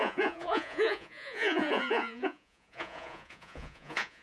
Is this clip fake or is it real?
fake